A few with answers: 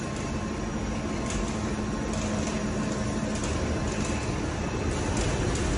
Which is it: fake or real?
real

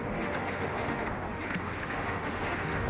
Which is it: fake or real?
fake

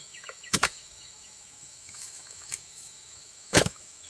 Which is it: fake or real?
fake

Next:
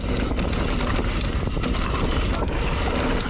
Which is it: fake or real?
real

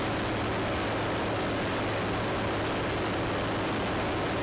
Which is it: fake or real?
real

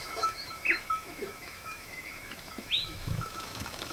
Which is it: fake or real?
fake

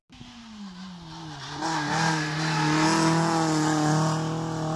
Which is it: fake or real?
real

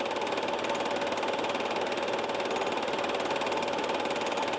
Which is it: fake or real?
real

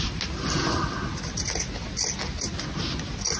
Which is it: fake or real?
real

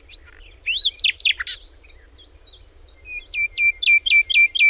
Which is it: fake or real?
real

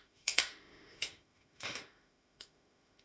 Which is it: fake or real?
fake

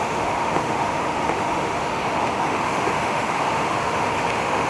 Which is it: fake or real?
fake